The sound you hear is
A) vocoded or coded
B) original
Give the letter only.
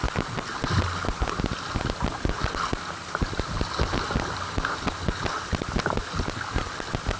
B